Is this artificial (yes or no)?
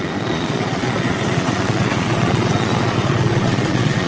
yes